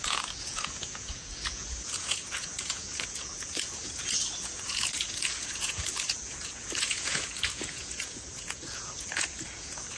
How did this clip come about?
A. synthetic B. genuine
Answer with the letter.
A